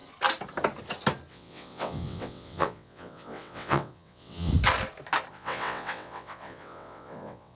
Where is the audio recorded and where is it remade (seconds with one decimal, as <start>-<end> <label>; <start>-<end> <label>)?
0.0-1.3 recorded; 1.3-4.5 remade; 4.5-5.3 recorded; 5.3-7.6 remade